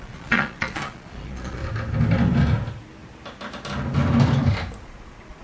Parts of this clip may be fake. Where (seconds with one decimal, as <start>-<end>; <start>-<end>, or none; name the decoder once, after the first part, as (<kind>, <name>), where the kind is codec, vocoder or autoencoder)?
0.0-1.6 (vocoder, Vocos); 4.8-5.4